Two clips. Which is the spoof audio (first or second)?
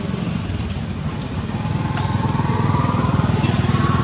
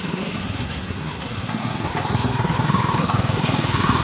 second